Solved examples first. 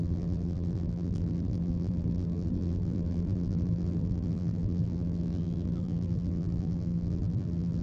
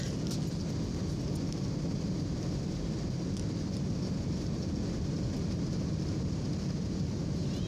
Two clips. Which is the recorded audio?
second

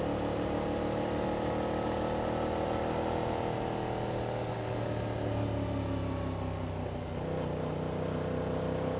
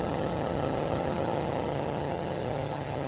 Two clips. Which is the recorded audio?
first